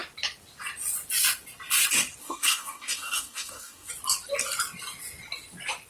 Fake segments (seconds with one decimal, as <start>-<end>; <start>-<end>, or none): 2.2-3.9